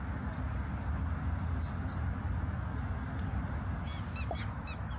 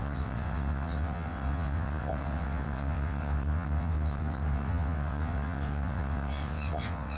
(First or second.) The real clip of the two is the first